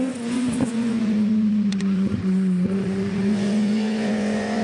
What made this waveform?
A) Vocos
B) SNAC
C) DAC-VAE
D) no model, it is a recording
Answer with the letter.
A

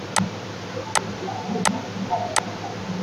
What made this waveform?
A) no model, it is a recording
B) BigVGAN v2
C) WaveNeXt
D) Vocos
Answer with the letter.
A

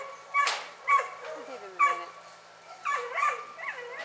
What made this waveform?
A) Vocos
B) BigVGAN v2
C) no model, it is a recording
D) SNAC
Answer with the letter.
C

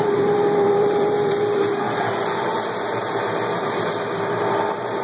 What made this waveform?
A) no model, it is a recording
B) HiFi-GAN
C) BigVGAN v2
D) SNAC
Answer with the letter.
C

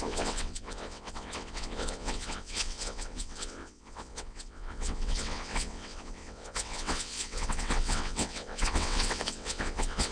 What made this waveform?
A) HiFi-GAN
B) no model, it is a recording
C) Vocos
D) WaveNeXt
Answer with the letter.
D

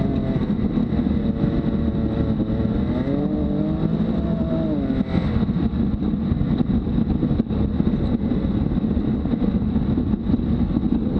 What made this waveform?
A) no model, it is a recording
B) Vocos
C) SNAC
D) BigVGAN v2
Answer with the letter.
A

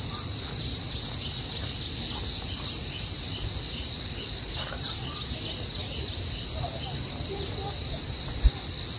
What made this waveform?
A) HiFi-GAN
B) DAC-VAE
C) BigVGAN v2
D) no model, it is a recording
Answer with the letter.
D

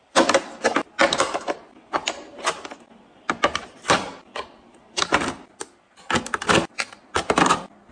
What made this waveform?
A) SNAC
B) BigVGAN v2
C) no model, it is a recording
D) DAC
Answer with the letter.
C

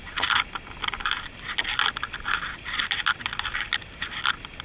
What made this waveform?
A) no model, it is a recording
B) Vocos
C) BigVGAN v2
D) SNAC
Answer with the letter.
A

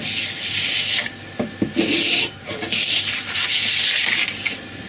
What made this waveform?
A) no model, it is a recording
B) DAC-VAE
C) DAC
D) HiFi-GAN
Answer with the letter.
A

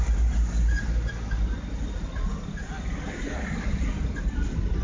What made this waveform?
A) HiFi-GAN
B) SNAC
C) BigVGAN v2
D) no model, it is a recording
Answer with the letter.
D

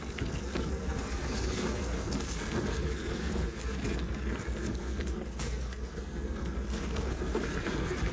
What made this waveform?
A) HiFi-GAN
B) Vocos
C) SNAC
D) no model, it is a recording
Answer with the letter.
C